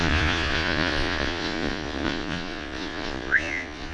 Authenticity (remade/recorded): remade